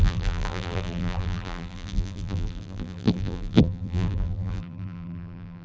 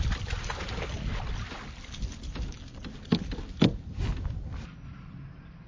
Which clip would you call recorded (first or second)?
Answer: second